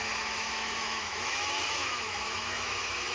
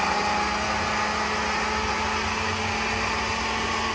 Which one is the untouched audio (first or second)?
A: second